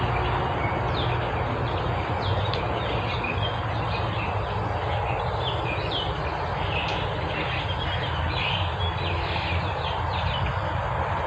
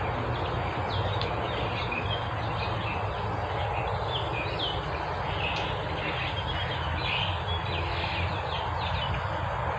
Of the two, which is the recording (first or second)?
second